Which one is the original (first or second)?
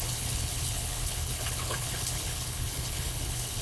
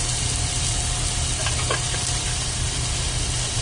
second